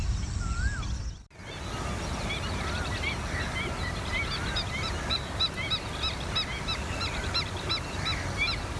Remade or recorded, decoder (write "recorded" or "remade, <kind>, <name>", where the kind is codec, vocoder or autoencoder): recorded